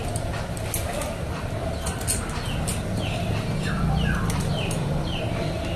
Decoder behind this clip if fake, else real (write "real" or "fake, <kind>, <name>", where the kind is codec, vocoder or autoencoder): real